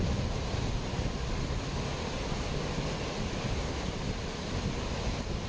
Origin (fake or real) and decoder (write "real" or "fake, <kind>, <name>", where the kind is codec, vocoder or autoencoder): real